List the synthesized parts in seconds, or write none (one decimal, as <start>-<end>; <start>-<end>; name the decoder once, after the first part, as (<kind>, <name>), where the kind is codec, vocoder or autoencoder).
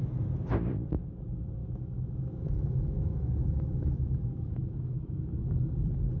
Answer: 1.6-5.3 (autoencoder, DAC-VAE)